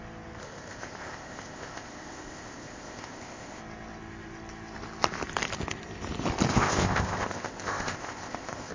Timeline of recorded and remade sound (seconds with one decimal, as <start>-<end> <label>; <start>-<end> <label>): 0.0-0.4 recorded; 0.4-3.6 remade; 3.6-6.5 recorded; 6.5-8.7 remade

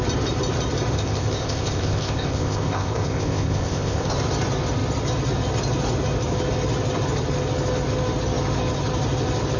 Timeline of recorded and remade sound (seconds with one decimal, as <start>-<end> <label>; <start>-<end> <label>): 0.0-0.9 recorded; 0.9-4.1 remade; 4.1-9.6 recorded

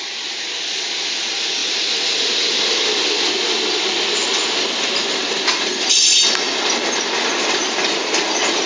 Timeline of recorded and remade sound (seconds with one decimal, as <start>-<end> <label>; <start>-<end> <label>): 0.0-8.7 recorded

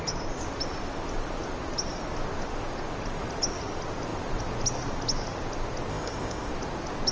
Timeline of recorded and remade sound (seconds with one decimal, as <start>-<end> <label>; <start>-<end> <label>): 0.0-5.9 recorded; 5.9-6.5 remade; 6.5-7.1 recorded

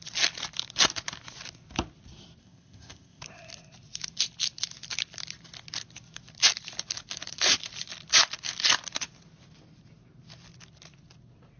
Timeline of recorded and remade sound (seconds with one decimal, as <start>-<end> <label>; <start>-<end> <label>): 0.0-2.4 recorded; 2.4-3.2 remade; 3.2-11.6 recorded

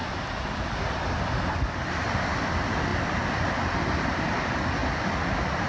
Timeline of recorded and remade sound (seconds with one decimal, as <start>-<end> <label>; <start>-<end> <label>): 0.0-5.7 recorded

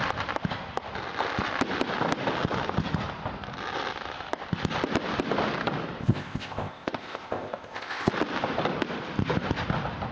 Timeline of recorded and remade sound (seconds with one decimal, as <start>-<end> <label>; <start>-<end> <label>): 0.0-6.0 recorded; 6.0-8.1 remade; 8.1-10.1 recorded

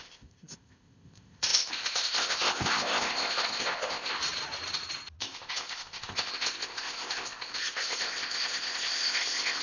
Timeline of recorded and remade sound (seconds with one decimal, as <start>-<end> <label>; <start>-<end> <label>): 0.0-4.2 remade; 4.2-5.2 recorded; 5.2-9.6 remade